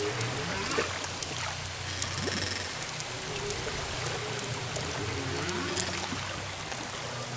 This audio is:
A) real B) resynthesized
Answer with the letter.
A